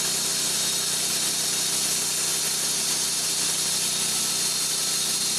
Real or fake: real